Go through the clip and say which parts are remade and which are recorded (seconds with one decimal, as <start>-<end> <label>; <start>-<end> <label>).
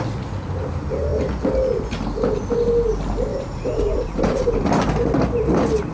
0.0-3.3 recorded; 3.3-4.7 remade; 4.7-5.9 recorded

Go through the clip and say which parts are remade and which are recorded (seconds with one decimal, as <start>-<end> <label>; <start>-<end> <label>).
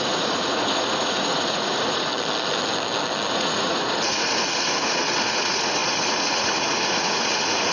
0.0-2.1 remade; 2.1-3.3 recorded; 3.3-7.7 remade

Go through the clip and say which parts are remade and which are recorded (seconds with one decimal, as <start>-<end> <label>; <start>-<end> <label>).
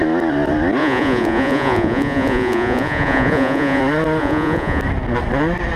0.0-0.8 recorded; 0.8-3.8 remade; 3.8-4.2 recorded; 4.2-4.8 remade; 4.8-5.8 recorded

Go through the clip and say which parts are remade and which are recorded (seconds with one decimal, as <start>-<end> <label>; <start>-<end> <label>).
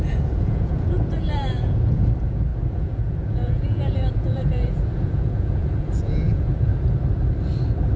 0.0-6.7 remade; 6.7-8.0 recorded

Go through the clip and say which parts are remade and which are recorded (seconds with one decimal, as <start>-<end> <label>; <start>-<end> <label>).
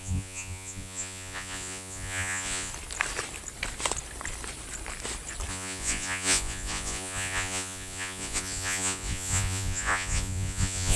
0.0-2.7 remade; 2.7-5.5 recorded; 5.5-11.0 remade